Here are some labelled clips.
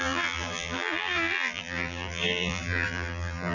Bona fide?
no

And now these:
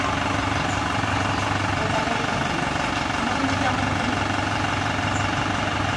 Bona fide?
yes